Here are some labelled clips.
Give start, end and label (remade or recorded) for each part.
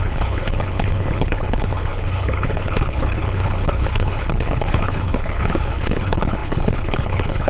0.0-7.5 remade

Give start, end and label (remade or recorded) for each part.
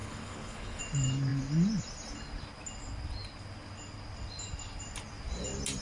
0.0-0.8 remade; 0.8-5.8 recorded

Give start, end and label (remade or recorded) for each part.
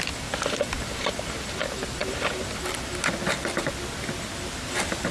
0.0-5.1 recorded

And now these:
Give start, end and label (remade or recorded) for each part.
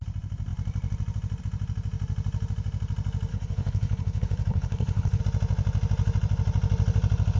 0.0-3.3 recorded; 3.3-5.2 remade; 5.2-7.4 recorded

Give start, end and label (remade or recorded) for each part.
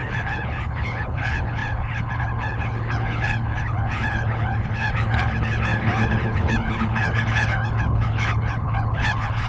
0.0-9.5 remade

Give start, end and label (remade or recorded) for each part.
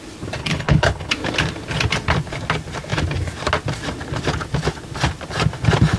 0.0-0.4 recorded; 0.4-1.1 remade; 1.1-6.0 recorded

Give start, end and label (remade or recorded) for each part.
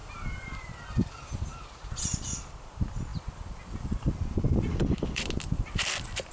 0.0-4.7 recorded; 4.7-5.2 remade; 5.2-6.3 recorded